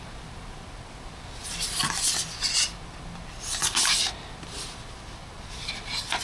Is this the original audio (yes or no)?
yes